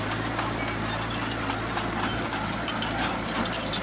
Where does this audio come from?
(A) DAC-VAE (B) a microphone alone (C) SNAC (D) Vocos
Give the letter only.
B